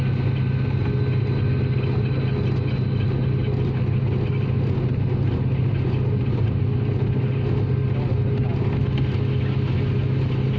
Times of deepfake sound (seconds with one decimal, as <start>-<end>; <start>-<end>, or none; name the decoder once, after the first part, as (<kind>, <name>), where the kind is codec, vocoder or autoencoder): none